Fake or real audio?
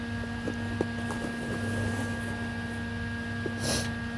real